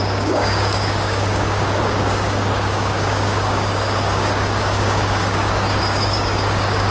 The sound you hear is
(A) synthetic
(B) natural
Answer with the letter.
A